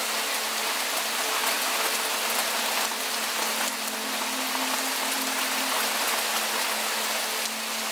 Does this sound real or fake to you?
real